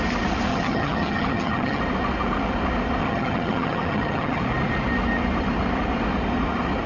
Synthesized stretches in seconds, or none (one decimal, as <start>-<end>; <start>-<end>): 0.5-1.8; 3.0-4.4